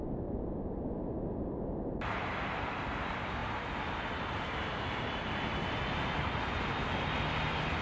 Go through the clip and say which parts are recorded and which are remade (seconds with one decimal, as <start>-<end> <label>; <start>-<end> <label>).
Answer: 0.0-7.8 recorded